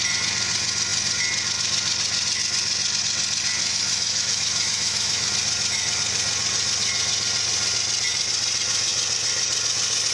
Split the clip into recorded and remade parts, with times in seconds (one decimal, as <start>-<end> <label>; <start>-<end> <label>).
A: 0.0-3.6 recorded; 3.6-5.3 remade; 5.3-10.1 recorded